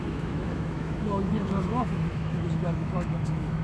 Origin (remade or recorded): remade